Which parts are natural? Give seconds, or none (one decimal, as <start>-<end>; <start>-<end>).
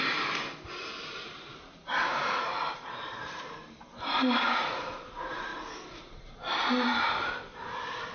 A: 5.5-8.1